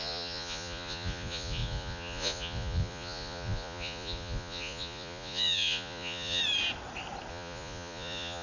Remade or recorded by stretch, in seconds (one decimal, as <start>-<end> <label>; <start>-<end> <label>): 0.0-6.4 remade; 6.4-7.3 recorded; 7.3-8.4 remade